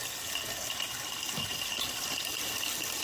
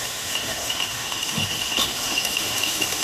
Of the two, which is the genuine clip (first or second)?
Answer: first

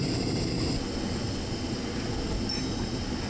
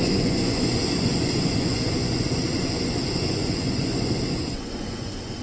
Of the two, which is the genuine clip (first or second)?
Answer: first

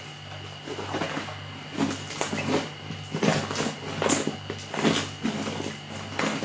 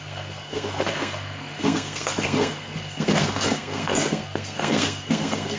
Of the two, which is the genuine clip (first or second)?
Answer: first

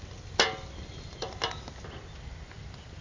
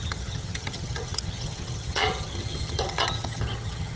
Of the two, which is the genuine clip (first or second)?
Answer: first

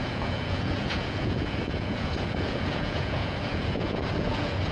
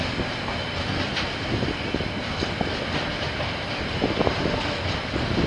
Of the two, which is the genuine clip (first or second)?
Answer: second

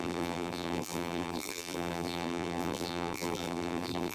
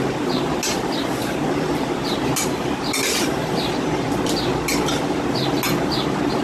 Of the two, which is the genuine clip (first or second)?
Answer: second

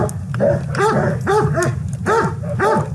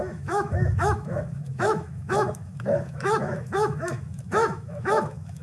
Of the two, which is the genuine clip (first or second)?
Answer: first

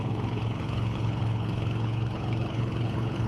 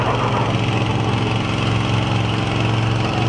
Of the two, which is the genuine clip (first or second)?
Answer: second